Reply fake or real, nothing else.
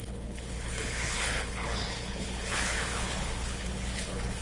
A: fake